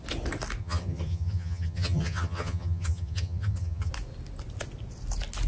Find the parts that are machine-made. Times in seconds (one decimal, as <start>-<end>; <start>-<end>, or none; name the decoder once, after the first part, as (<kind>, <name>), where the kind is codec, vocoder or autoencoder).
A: 0.6-3.9 (vocoder, HiFi-GAN)